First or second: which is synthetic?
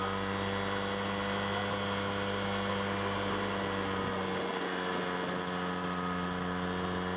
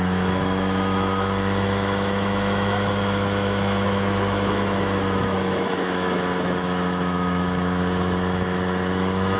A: second